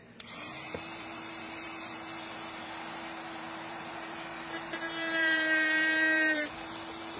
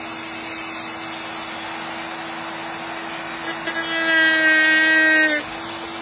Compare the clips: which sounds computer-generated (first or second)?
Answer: first